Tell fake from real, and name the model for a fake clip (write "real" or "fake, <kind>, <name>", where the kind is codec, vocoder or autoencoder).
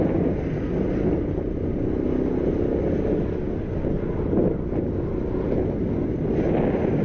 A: real